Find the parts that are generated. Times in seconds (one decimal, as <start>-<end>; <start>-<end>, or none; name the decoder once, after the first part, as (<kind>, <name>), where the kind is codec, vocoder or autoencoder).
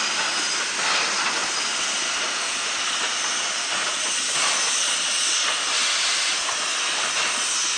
1.4-2.8 (vocoder, BigVGAN v2); 5.8-7.1